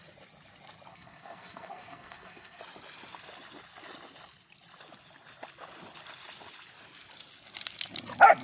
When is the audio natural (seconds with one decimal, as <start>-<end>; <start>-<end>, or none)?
0.0-0.9; 2.6-8.4